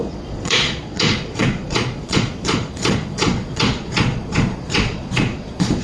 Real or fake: fake